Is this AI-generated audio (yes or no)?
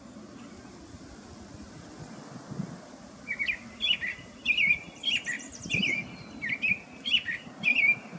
yes